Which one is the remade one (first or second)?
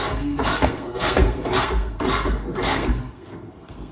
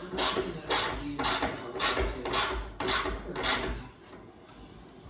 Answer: first